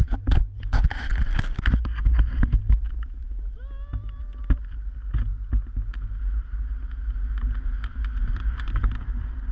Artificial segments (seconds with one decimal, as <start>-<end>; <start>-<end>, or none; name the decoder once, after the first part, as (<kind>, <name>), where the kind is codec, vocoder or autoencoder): 2.6-3.3 (autoencoder, DAC-VAE)